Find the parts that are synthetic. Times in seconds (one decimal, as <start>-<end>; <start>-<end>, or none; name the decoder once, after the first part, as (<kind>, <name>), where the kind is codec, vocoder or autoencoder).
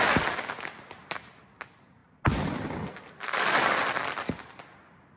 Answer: none